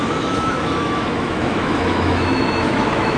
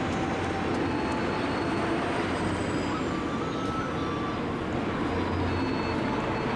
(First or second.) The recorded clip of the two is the second